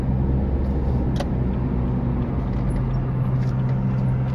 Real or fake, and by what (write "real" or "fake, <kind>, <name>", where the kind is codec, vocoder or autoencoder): real